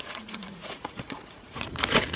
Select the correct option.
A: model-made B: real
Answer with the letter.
A